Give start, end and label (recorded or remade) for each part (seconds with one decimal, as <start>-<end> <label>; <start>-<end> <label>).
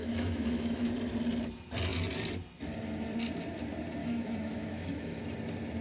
0.0-0.9 remade; 0.9-4.0 recorded; 4.0-5.2 remade; 5.2-5.8 recorded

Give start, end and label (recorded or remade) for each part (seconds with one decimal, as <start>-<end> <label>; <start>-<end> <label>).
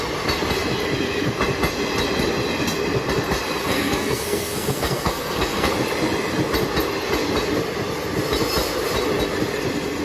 0.0-3.6 recorded; 3.6-5.7 remade; 5.7-10.0 recorded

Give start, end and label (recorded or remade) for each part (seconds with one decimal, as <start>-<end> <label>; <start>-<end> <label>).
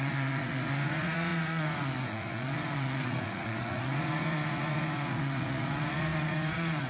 0.0-6.9 remade